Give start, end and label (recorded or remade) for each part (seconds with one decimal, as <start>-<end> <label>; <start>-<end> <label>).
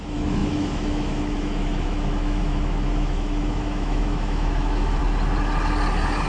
0.0-5.0 remade; 5.0-6.3 recorded